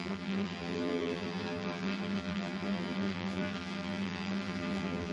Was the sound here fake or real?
fake